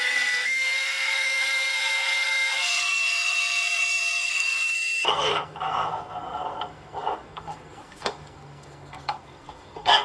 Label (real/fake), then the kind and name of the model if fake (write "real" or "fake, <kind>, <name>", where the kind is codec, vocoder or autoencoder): fake, codec, SNAC